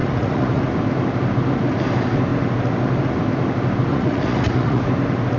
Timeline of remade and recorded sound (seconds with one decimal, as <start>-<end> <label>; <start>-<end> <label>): 0.0-0.6 remade; 0.6-3.9 recorded; 3.9-4.8 remade; 4.8-5.4 recorded